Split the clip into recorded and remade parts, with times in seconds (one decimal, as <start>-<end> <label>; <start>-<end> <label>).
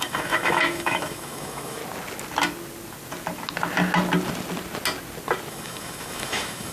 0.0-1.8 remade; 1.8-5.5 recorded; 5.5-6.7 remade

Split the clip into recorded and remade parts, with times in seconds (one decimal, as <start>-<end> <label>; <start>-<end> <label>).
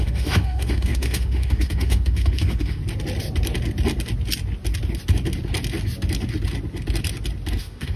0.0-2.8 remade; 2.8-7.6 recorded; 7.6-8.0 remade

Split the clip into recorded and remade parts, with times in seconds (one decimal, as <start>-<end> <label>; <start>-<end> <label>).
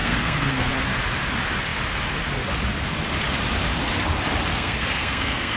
0.0-0.7 remade; 0.7-4.5 recorded; 4.5-5.6 remade